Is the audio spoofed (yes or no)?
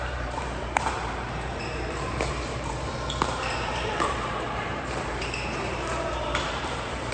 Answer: yes